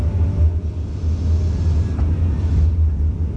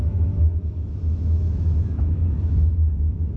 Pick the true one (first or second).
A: first